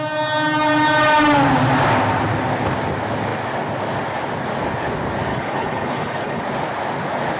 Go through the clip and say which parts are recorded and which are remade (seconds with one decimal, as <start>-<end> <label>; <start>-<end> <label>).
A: 0.0-5.3 recorded; 5.3-6.4 remade; 6.4-7.4 recorded